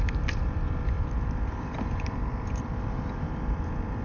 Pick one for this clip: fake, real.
fake